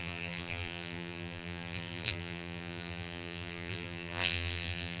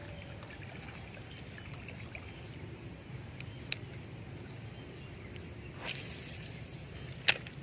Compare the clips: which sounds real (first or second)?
second